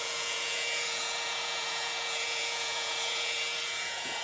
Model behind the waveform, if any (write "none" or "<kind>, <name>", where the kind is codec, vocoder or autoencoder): vocoder, Vocos